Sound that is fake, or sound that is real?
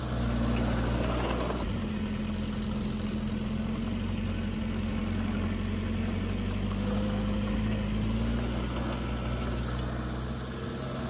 real